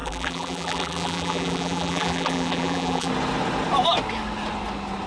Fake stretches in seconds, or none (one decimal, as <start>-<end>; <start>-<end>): 0.0-3.1